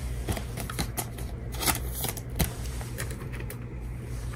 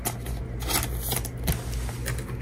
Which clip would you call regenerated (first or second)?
first